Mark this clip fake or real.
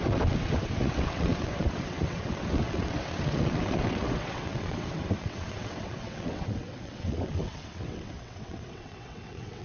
fake